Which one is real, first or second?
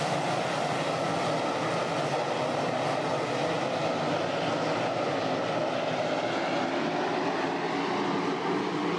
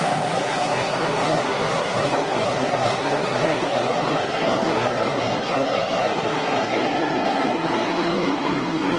first